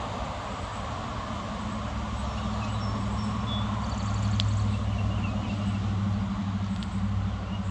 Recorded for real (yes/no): yes